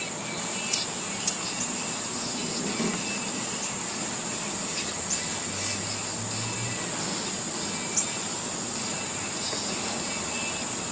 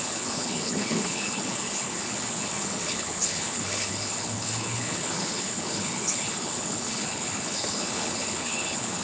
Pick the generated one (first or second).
second